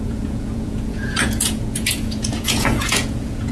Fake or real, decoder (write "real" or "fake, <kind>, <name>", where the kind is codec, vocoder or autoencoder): fake, vocoder, Vocos